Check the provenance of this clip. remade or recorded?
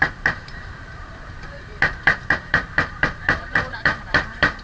remade